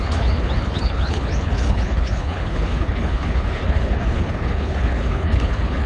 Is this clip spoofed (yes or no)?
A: yes